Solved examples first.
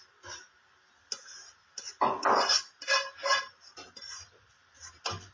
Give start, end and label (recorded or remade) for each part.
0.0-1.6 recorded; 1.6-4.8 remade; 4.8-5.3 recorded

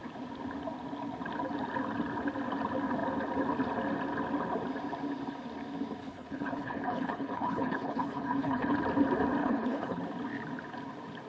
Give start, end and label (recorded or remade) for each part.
0.0-6.0 recorded; 6.0-8.8 remade; 8.8-9.4 recorded; 9.4-10.0 remade; 10.0-11.3 recorded